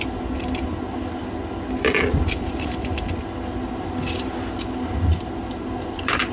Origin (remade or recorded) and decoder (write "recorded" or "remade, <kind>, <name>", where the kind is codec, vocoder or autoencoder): recorded